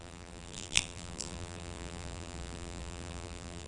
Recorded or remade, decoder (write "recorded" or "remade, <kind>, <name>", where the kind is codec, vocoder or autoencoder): remade, vocoder, BigVGAN v2